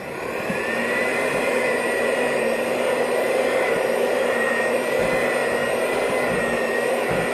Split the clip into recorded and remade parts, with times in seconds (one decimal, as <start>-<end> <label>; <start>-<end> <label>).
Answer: 0.0-1.1 recorded; 1.1-5.0 remade; 5.0-7.3 recorded